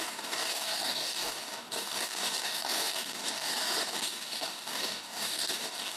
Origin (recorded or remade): remade